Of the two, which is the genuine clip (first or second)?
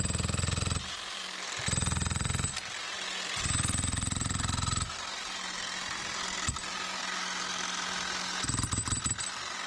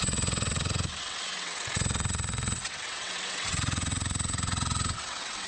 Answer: first